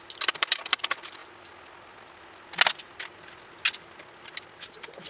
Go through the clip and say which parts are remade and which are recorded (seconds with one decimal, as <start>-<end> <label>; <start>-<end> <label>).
0.0-5.1 recorded